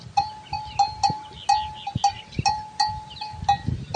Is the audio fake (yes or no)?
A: no